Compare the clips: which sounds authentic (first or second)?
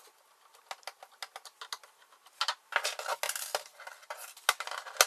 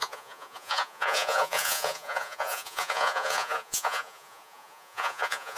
first